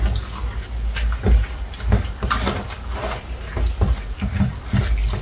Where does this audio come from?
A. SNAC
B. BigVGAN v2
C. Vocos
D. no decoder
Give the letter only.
D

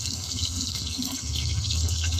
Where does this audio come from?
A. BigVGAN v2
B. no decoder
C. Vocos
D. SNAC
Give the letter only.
D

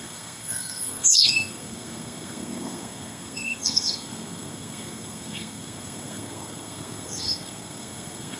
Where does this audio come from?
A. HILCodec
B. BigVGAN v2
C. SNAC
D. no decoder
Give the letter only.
C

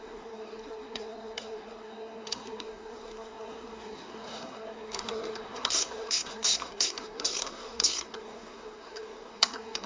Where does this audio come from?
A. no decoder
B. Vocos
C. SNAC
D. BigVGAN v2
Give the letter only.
C